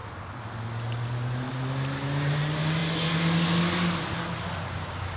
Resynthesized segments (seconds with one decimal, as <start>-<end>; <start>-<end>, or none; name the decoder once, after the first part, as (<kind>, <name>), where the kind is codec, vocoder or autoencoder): none